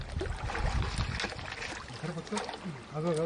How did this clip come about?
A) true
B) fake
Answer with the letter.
A